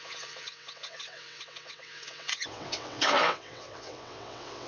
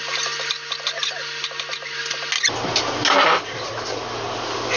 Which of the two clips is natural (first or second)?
second